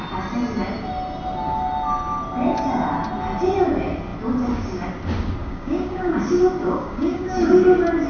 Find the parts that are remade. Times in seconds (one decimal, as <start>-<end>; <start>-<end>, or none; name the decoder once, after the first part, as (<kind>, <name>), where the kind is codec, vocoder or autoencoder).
5.4-6.1 (codec, DAC); 6.6-7.5